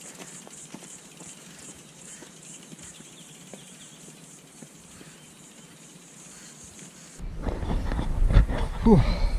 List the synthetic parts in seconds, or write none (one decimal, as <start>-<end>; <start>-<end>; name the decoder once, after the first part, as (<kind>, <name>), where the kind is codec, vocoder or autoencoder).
0.0-6.1 (vocoder, BigVGAN v2); 7.4-9.4